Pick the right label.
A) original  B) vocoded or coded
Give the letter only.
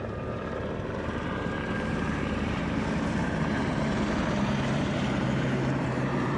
B